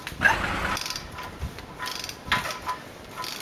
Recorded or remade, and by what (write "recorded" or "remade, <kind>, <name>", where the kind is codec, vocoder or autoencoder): recorded